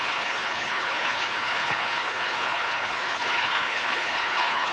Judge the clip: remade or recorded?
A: remade